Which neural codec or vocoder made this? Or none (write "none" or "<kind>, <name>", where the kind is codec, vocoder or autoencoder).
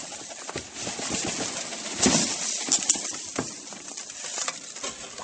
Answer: none